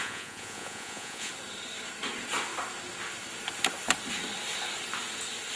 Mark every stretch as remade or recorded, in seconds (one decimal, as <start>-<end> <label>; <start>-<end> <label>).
0.0-1.3 remade; 1.3-5.6 recorded